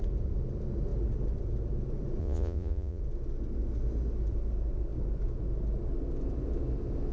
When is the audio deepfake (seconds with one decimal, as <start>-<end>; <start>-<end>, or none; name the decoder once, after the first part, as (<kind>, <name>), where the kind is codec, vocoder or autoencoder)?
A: 2.2-3.0 (vocoder, Vocos)